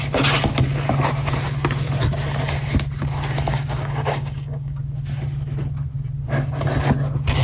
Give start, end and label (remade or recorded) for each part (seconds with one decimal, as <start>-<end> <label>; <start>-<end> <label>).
0.0-3.5 recorded; 3.5-4.8 remade; 4.8-7.4 recorded